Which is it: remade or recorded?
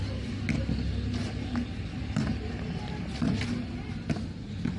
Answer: recorded